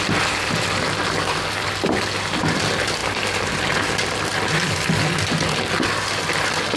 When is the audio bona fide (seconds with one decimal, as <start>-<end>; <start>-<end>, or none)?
0.0-6.8